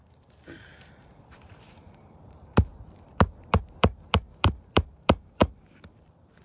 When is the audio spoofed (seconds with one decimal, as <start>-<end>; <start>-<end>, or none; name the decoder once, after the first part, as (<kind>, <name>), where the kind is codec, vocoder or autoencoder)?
0.0-2.7 (vocoder, BigVGAN v2); 3.7-5.4